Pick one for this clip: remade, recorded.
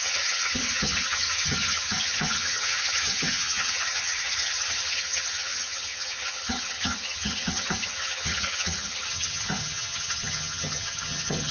remade